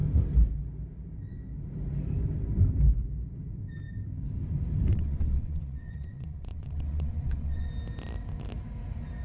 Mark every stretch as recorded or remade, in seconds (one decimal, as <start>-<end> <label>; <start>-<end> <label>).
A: 0.0-4.9 recorded; 4.9-7.7 remade; 7.7-9.2 recorded